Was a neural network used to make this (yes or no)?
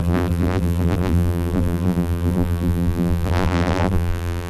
yes